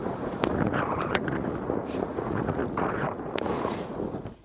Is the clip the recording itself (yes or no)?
no